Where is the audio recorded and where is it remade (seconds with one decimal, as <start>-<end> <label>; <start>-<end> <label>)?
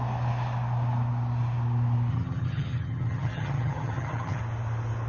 0.0-2.1 recorded; 2.1-4.4 remade; 4.4-5.1 recorded